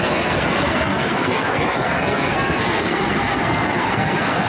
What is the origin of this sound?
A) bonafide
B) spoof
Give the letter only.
B